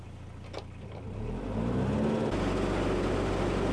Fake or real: real